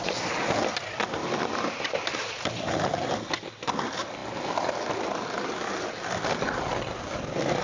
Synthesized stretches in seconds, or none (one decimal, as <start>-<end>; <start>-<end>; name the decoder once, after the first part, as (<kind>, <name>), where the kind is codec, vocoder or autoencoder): none